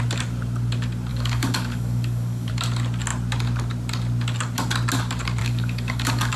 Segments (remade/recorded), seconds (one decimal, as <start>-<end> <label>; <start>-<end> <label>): 0.0-1.1 recorded; 1.1-2.5 remade; 2.5-5.4 recorded; 5.4-6.4 remade